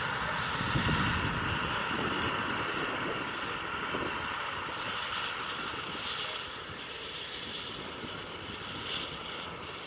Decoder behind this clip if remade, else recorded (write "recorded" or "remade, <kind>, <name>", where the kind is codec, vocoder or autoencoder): recorded